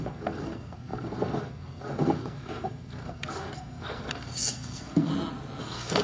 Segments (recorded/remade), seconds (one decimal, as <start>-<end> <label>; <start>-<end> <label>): 0.0-5.1 remade; 5.1-5.6 recorded; 5.6-6.0 remade